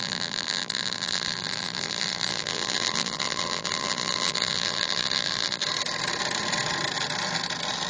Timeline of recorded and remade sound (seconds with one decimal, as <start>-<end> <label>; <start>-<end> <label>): 0.0-5.6 remade; 5.6-7.9 recorded